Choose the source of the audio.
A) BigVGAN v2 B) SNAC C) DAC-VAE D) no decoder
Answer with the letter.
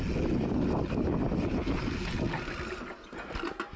D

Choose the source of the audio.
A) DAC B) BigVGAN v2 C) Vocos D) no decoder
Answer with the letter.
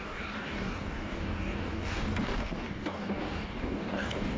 A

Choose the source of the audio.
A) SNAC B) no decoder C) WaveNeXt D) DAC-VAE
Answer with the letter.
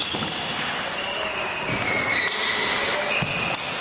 B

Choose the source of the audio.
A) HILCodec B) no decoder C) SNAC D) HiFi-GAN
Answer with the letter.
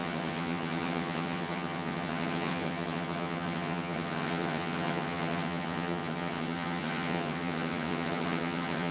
D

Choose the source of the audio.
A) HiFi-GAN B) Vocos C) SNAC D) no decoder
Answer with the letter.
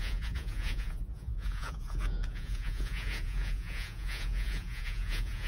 B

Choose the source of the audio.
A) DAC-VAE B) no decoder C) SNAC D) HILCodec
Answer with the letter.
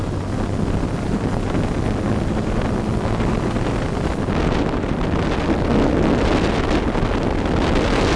B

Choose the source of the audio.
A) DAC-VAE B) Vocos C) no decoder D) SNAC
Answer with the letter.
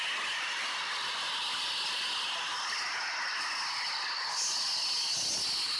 C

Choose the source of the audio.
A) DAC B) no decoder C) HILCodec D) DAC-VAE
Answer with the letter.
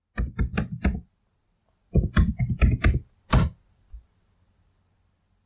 B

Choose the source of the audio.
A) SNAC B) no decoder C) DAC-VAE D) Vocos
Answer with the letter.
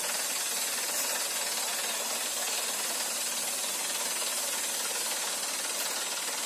B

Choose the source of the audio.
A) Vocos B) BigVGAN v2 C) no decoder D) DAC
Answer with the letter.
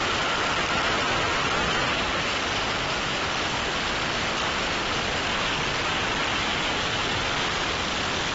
C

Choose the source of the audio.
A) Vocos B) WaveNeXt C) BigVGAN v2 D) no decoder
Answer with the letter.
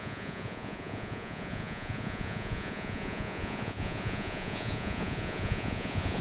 A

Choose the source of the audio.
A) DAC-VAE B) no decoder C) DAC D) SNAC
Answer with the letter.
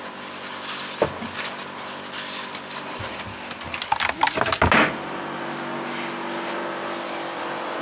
B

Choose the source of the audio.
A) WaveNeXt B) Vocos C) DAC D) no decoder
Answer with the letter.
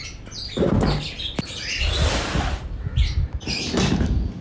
D